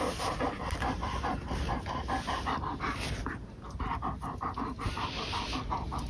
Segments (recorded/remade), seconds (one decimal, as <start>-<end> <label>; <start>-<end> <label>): 0.0-6.1 recorded